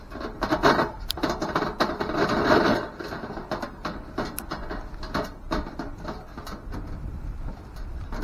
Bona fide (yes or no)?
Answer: no